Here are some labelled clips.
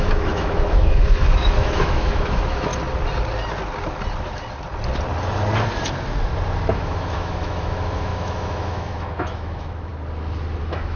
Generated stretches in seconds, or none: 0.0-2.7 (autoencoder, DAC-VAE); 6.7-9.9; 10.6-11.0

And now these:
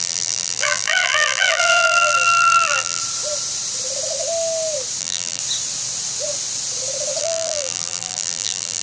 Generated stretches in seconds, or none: 0.0-3.0 (vocoder, BigVGAN v2); 5.0-5.4; 7.2-8.8

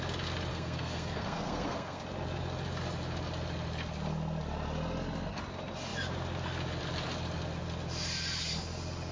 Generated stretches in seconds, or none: 0.5-2.0 (codec, SNAC)

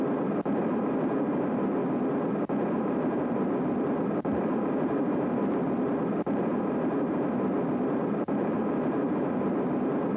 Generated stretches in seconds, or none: 0.0-1.8 (vocoder, BigVGAN v2); 2.7-10.2

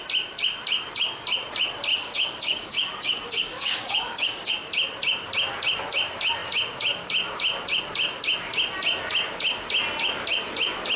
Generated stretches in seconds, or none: 1.9-4.5 (codec, DAC)

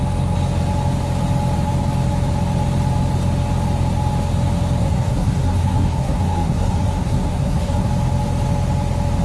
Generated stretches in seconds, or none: 4.8-7.9 (codec, SNAC)

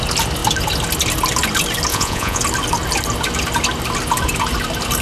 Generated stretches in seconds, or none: 1.9-2.4 (vocoder, Vocos)

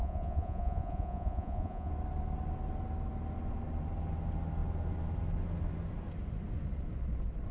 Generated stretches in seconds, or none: 0.0-1.9 (vocoder, Vocos)